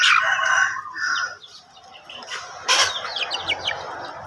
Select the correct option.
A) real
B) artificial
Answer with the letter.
A